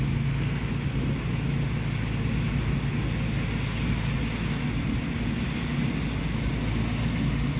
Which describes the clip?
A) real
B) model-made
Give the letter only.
A